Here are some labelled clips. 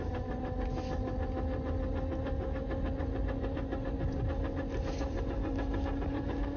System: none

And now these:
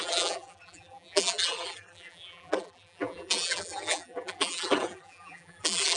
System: vocoder, BigVGAN v2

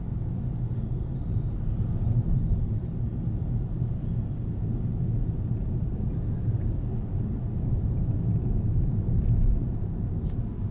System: vocoder, BigVGAN v2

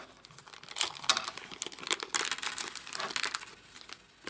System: none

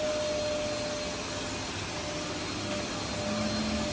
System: none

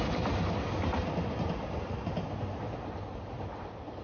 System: none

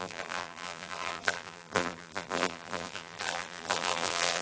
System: vocoder, BigVGAN v2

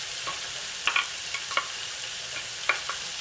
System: none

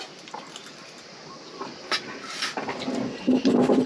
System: none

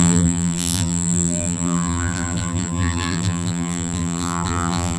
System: vocoder, BigVGAN v2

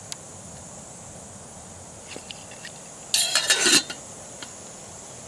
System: none